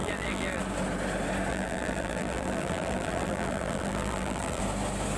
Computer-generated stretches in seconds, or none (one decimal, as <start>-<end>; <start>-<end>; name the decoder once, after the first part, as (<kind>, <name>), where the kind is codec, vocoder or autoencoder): 0.0-0.6 (vocoder, BigVGAN v2); 1.5-4.6